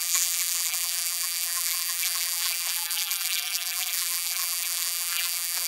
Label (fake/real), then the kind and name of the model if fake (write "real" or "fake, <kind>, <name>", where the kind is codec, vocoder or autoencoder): fake, vocoder, BigVGAN v2